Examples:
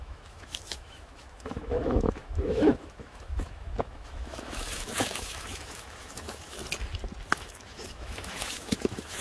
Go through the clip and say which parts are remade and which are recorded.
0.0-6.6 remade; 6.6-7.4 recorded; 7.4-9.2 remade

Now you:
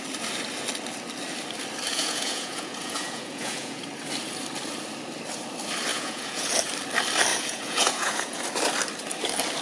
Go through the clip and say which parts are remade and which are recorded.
0.0-1.9 recorded; 1.9-3.8 remade; 3.8-5.9 recorded; 5.9-6.5 remade; 6.5-7.3 recorded; 7.3-8.4 remade; 8.4-9.6 recorded

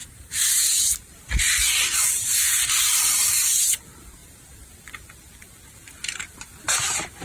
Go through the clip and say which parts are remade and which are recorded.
0.0-7.2 remade

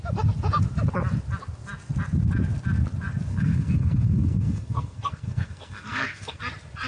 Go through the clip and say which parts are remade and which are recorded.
0.0-3.3 recorded; 3.3-6.4 remade; 6.4-6.9 recorded

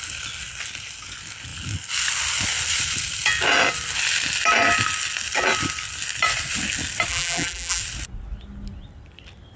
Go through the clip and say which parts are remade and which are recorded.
0.0-7.1 recorded; 7.1-7.8 remade; 7.8-9.6 recorded